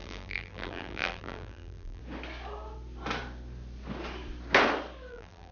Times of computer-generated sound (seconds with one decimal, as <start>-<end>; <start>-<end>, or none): 0.0-2.0; 5.1-5.5